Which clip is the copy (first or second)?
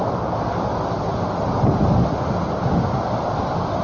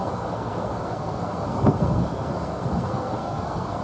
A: second